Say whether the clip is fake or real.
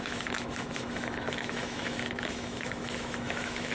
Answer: fake